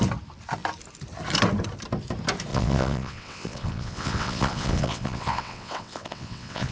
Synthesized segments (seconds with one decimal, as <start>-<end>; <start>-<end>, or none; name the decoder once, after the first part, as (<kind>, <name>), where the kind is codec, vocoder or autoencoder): 2.5-6.7 (vocoder, WaveNeXt)